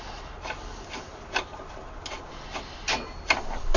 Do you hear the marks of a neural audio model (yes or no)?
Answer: no